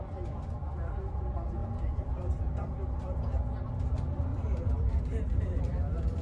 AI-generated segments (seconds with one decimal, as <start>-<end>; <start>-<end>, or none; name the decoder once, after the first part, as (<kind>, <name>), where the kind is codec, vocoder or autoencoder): 4.3-5.0 (vocoder, BigVGAN v2)